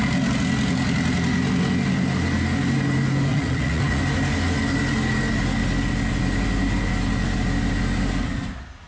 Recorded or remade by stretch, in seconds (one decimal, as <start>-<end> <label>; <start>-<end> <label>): 0.0-3.3 recorded; 3.3-4.0 remade; 4.0-8.9 recorded